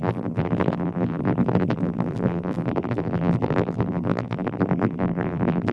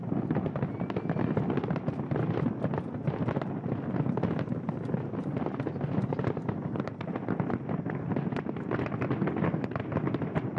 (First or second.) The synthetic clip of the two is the first